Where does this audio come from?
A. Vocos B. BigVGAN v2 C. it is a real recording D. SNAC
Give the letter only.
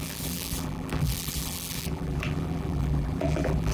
B